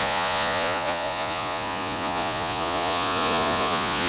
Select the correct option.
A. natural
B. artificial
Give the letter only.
B